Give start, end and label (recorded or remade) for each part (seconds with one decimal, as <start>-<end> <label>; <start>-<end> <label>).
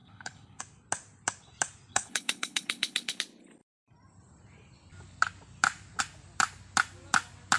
0.0-0.6 remade; 0.6-1.9 recorded; 1.9-3.2 remade; 3.2-7.6 recorded